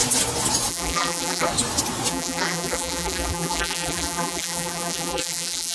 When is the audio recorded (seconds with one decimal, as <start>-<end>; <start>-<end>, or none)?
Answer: 0.0-0.7; 1.5-2.1